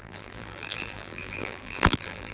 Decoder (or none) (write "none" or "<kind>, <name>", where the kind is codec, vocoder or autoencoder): vocoder, BigVGAN v2